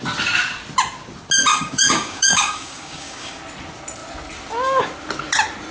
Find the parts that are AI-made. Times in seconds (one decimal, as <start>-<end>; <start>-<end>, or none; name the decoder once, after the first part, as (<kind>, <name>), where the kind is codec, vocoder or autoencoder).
1.5-3.4 (codec, DAC)